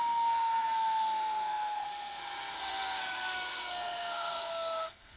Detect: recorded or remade remade